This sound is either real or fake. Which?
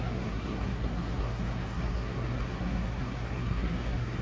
fake